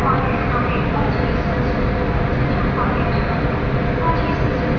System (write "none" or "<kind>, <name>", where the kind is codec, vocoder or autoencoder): none